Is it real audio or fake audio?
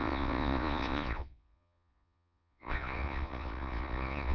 fake